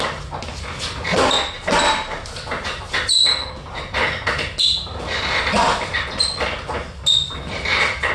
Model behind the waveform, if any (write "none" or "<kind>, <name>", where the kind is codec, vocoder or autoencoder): none